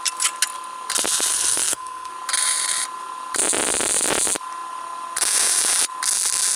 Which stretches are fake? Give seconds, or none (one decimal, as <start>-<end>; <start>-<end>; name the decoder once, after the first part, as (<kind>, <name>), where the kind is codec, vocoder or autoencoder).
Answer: 1.3-2.1 (codec, SNAC)